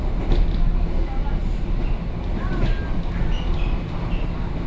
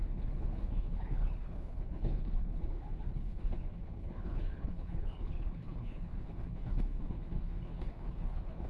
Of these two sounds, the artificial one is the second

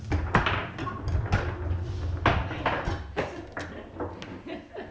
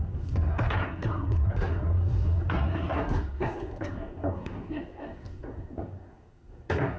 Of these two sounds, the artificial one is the second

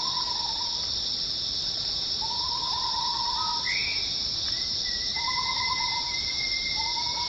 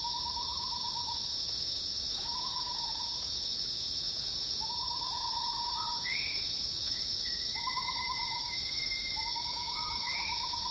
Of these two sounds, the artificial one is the second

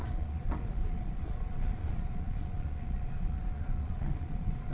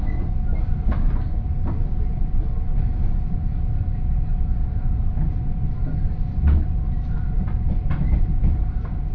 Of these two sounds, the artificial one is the first